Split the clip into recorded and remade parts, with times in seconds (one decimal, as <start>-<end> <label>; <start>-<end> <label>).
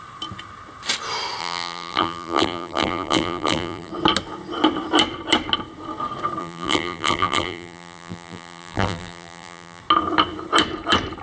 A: 0.0-1.4 recorded; 1.4-3.9 remade; 3.9-6.4 recorded; 6.4-9.8 remade; 9.8-11.2 recorded